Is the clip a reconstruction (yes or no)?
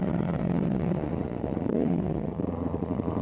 yes